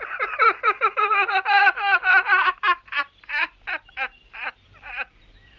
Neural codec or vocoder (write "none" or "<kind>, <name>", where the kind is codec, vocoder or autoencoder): vocoder, BigVGAN v2